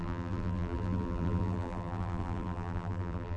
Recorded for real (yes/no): no